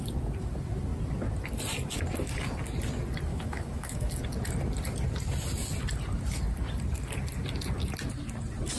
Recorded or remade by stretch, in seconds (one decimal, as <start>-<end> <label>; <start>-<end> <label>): 0.0-3.3 recorded; 3.3-4.1 remade; 4.1-8.8 recorded